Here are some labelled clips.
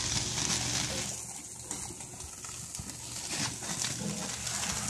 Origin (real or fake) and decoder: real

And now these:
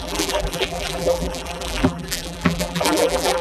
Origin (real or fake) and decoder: fake, vocoder, BigVGAN v2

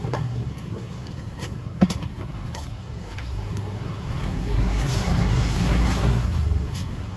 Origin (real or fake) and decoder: fake, codec, SNAC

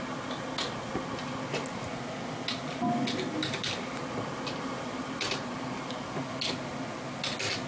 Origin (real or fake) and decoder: real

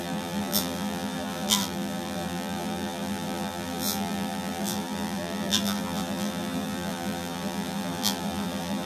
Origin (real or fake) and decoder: fake, vocoder, BigVGAN v2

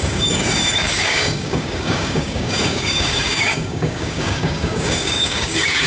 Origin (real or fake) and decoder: fake, codec, DAC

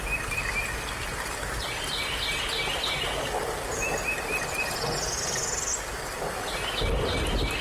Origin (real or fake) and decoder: real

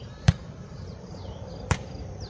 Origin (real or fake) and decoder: fake, vocoder, BigVGAN v2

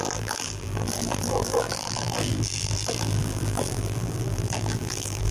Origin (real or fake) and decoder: fake, vocoder, BigVGAN v2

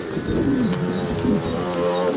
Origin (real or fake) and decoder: real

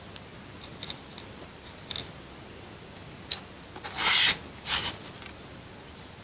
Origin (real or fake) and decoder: real